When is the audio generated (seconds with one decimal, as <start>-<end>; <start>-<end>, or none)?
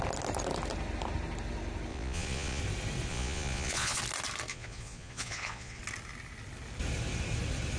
1.9-2.6; 3.1-4.0; 4.5-5.8